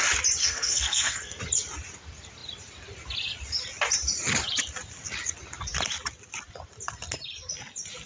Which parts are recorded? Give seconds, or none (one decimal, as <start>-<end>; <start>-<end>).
0.0-0.4; 1.4-8.1

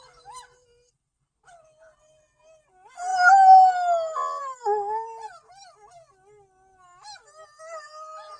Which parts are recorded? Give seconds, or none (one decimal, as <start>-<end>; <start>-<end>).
0.0-8.4

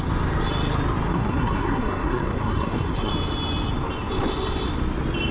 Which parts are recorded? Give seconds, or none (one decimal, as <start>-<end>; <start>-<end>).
0.0-1.1; 3.1-5.3